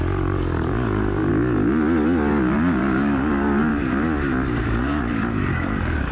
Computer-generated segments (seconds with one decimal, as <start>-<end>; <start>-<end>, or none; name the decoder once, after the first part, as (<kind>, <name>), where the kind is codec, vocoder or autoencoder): 0.0-1.3 (codec, DAC); 2.8-3.7; 4.6-6.1

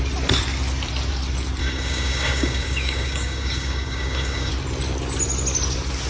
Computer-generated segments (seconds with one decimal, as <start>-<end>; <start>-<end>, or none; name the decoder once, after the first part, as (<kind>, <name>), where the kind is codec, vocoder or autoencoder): 1.6-4.5 (codec, DAC)

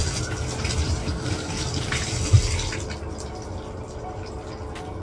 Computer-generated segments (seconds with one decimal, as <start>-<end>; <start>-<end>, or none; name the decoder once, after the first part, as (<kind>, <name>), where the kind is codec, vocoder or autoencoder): 1.0-1.9 (codec, DAC)

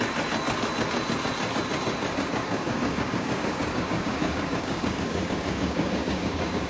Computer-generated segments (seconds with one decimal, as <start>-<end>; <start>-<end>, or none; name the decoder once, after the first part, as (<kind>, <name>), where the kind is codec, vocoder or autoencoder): 2.4-6.7 (codec, DAC)